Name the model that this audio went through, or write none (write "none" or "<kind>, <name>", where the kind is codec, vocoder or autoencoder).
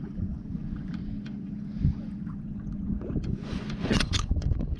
vocoder, Vocos